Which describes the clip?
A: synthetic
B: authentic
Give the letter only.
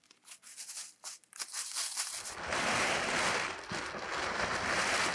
B